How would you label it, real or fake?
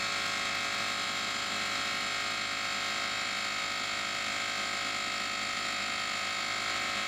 fake